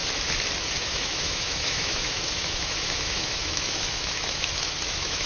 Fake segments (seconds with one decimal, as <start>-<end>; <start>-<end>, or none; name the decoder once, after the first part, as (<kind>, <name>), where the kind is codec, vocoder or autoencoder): 0.8-5.3 (autoencoder, DAC-VAE)